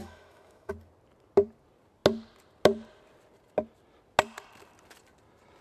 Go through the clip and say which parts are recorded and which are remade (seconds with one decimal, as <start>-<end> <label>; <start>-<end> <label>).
0.0-0.7 remade; 0.7-5.6 recorded